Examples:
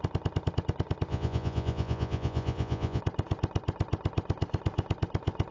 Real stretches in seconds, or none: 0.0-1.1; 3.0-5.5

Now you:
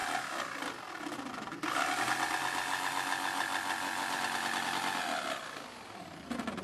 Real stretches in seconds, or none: 0.0-6.6

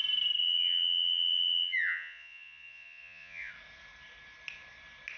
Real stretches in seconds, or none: 0.0-0.4; 3.5-5.2

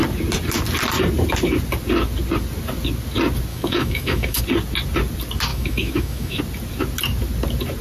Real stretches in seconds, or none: 0.0-3.5; 4.4-5.5; 6.4-7.8

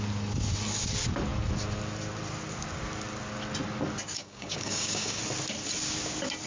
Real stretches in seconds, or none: 0.0-4.2; 5.2-6.5

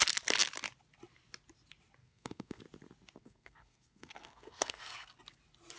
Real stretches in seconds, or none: 0.0-2.0; 2.6-3.2; 5.1-5.8